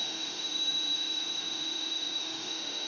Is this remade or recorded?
remade